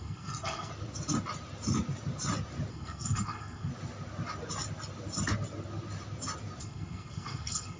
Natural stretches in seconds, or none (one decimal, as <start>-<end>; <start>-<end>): 0.7-2.7; 3.7-6.6